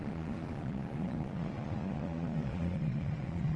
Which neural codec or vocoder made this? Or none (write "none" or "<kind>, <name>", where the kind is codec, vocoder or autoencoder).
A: vocoder, Vocos